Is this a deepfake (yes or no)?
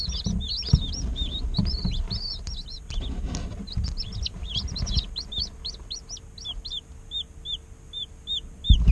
no